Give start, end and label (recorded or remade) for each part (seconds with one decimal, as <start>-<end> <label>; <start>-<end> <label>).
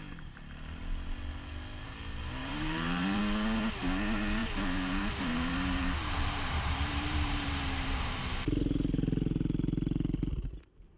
0.0-2.4 recorded; 2.4-3.2 remade; 3.2-4.4 recorded; 4.4-8.2 remade; 8.2-11.0 recorded